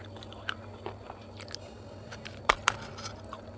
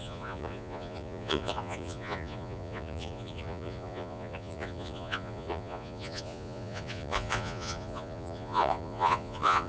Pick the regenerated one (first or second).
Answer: second